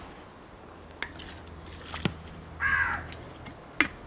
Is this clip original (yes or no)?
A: yes